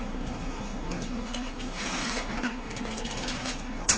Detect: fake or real fake